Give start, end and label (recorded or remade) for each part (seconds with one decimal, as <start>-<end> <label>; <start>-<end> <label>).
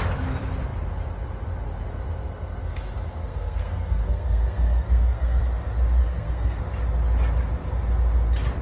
0.0-3.2 recorded; 3.2-5.4 remade; 5.4-6.0 recorded; 6.0-6.6 remade; 6.6-8.6 recorded